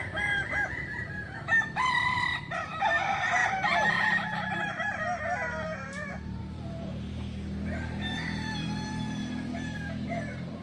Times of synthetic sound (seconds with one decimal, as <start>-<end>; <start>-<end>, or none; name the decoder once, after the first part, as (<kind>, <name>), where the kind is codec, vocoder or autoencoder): 0.0-10.6 (vocoder, BigVGAN v2)